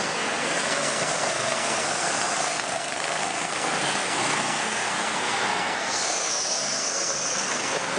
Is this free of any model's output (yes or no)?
no